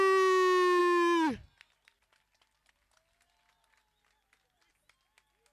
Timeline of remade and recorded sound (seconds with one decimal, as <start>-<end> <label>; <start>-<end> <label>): 0.0-5.5 recorded